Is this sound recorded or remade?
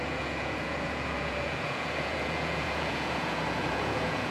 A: remade